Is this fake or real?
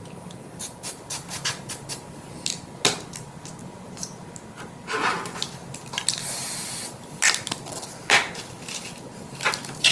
real